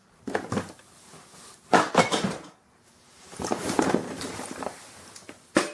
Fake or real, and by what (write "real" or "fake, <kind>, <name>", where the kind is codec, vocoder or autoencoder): fake, vocoder, BigVGAN v2